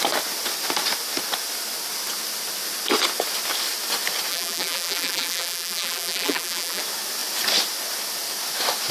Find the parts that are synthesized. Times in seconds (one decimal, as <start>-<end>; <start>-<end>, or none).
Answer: 4.3-6.8